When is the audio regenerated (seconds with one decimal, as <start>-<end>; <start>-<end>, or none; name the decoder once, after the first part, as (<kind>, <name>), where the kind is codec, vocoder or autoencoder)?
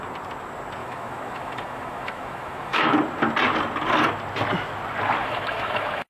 0.8-2.9 (autoencoder, DAC-VAE); 5.2-6.1